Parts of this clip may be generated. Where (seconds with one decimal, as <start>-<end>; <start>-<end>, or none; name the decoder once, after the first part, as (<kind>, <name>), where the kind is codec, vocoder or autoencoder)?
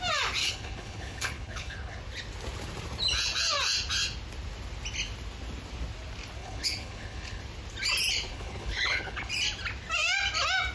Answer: 0.4-2.0 (codec, HILCodec); 6.4-7.4; 8.3-9.3